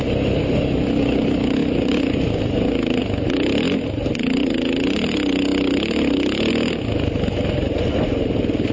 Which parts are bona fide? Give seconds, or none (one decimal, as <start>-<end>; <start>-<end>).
0.0-8.7